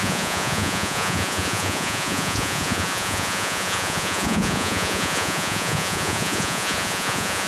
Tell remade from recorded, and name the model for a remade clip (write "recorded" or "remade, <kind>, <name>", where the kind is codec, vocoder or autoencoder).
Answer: remade, vocoder, Vocos